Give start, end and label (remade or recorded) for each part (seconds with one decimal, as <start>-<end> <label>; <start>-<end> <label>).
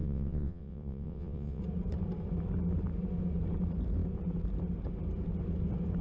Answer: 0.0-1.6 remade; 1.6-6.0 recorded